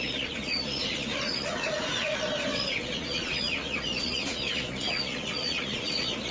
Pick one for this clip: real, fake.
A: fake